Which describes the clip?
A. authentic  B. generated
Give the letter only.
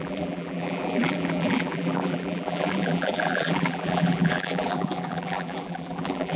B